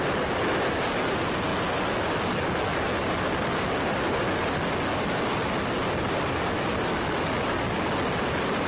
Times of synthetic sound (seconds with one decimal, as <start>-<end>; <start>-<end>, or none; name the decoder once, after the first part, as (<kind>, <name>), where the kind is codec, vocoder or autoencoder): none